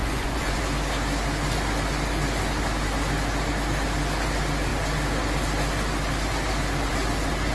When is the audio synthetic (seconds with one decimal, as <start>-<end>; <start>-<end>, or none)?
0.0-0.6